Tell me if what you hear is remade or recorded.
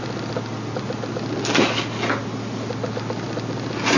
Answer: recorded